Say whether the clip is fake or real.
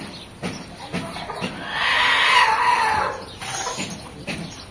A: real